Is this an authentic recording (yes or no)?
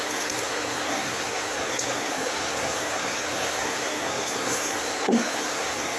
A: no